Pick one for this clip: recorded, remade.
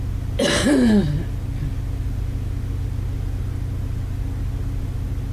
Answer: recorded